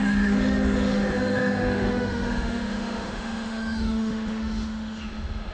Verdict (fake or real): fake